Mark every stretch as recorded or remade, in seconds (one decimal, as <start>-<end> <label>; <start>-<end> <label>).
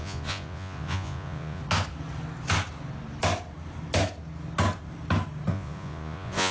0.0-1.6 remade; 1.6-5.5 recorded; 5.5-6.5 remade